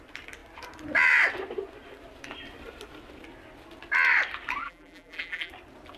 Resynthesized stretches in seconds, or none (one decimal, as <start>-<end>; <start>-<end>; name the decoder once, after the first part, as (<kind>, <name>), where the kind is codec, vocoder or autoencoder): 4.6-5.5 (vocoder, BigVGAN v2)